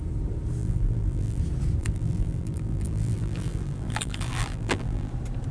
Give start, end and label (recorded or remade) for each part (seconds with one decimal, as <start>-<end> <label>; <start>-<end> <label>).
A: 0.0-0.6 recorded; 0.6-1.4 remade; 1.4-1.8 recorded; 1.8-5.1 remade; 5.1-5.5 recorded